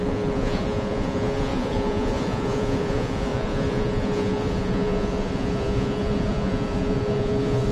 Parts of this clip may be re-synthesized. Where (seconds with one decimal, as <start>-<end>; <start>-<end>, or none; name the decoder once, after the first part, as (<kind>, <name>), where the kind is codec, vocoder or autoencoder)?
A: 0.0-7.7 (vocoder, Vocos)